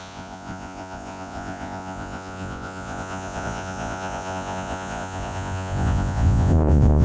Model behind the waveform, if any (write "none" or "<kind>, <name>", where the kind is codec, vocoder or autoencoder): vocoder, Vocos